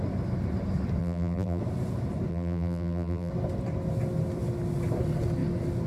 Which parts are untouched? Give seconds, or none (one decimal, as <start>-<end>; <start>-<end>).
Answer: 0.0-1.0; 1.6-2.3; 3.3-5.9